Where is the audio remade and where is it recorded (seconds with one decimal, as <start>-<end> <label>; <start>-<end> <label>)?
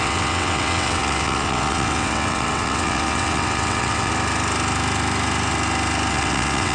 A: 0.0-4.1 remade; 4.1-6.1 recorded; 6.1-6.7 remade